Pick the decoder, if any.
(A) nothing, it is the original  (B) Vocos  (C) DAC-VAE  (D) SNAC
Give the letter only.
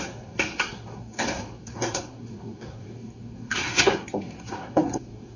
D